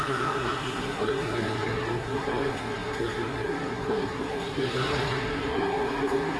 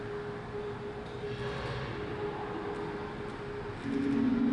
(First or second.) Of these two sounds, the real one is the second